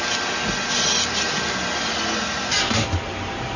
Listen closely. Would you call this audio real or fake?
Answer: real